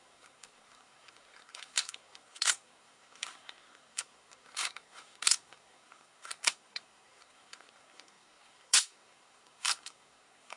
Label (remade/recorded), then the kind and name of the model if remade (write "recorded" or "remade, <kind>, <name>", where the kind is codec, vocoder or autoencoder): remade, codec, SNAC